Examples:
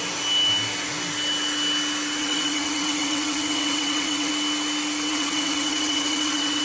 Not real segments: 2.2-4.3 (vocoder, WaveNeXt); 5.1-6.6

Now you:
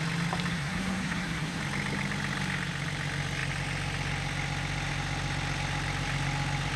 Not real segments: 0.5-1.6 (codec, SNAC)

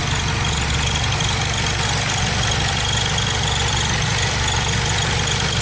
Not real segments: none

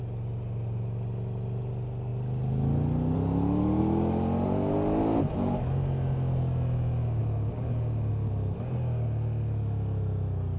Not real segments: none

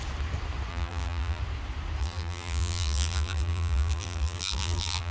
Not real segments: 0.7-1.4 (vocoder, BigVGAN v2); 2.0-5.1

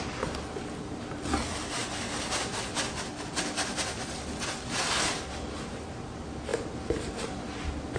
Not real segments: none